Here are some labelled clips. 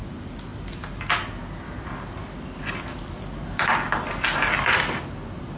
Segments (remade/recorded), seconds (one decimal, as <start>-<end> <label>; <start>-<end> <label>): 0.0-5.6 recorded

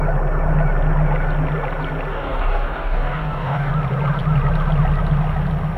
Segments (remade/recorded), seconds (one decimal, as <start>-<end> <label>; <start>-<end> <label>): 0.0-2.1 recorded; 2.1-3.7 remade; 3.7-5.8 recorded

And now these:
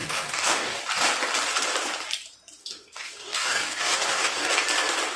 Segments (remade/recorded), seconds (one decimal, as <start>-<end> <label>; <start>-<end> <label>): 0.0-0.8 remade; 0.8-2.6 recorded; 2.6-4.5 remade; 4.5-5.2 recorded

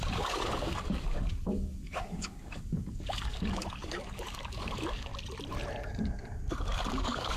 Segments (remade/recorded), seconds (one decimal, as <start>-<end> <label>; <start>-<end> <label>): 0.0-5.1 remade; 5.1-5.8 recorded; 5.8-7.4 remade